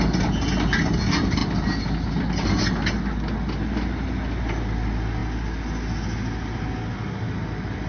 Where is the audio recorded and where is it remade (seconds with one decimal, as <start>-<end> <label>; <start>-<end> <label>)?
0.0-7.9 recorded